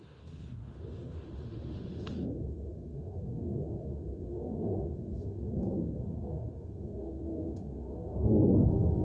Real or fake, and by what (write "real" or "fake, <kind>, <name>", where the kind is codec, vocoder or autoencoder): fake, autoencoder, DAC-VAE